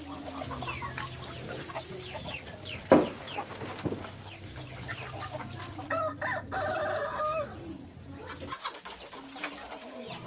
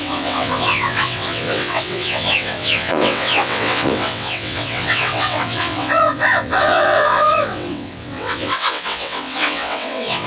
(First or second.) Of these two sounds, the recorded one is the first